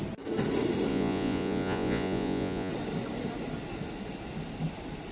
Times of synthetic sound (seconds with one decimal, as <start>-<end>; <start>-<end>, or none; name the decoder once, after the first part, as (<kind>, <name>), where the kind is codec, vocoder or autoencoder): 0.9-2.7 (vocoder, Vocos)